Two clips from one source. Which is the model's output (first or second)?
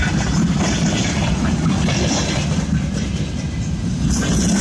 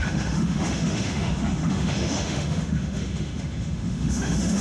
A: second